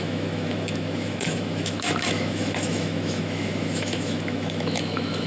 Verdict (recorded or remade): remade